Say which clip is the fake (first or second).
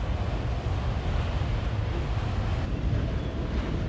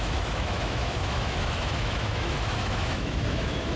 second